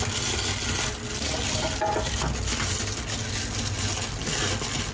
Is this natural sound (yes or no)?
yes